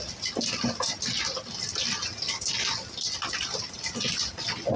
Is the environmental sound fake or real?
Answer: real